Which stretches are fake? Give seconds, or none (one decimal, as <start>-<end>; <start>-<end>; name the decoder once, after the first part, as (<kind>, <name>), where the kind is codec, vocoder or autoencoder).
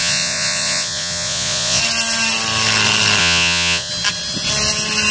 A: 0.0-1.8 (vocoder, Vocos); 3.2-3.9